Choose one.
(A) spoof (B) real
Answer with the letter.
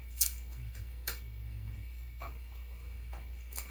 A